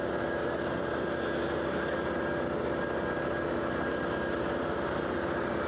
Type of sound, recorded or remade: recorded